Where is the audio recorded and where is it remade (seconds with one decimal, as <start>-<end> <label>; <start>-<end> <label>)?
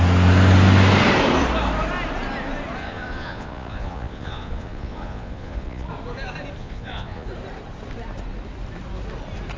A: 0.0-2.8 recorded; 2.8-5.9 remade; 5.9-6.6 recorded; 6.6-7.3 remade; 7.3-9.6 recorded